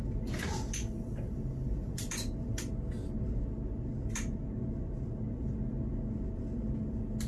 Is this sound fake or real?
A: real